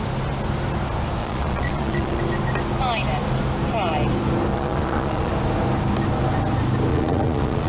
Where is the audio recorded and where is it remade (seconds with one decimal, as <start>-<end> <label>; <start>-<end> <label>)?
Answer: 0.0-1.2 recorded; 1.2-2.2 remade; 2.2-4.5 recorded; 4.5-5.3 remade; 5.3-6.9 recorded; 6.9-7.7 remade